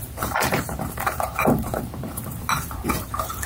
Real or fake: fake